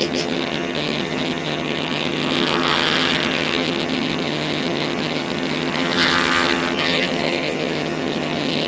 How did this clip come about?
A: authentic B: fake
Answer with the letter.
B